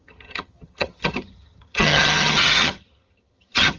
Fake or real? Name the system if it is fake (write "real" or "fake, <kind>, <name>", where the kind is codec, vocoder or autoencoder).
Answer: fake, vocoder, HiFi-GAN